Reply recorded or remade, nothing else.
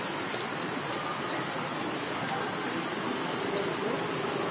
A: recorded